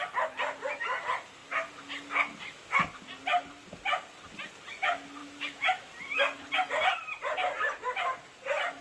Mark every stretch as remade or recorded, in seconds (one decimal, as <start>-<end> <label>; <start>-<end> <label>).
0.0-5.2 recorded; 5.2-5.9 remade; 5.9-8.8 recorded